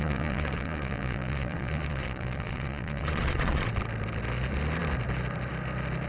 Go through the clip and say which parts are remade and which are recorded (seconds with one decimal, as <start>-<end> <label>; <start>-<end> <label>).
0.0-3.7 remade; 3.7-6.1 recorded